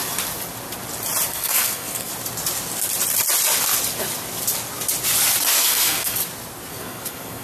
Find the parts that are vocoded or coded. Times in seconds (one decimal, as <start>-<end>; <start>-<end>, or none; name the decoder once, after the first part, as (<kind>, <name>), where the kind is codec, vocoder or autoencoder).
1.3-2.1 (codec, SNAC); 5.5-6.2; 6.7-7.4